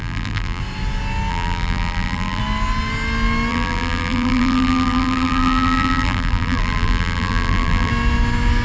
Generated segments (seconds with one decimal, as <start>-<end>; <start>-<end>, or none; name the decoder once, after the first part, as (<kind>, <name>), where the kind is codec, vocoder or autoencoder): 0.0-0.6 (vocoder, BigVGAN v2); 1.3-2.4; 3.5-7.9